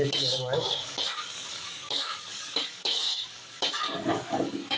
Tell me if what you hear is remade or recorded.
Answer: remade